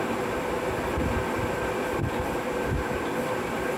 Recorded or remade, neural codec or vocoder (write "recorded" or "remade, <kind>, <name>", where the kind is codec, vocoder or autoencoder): recorded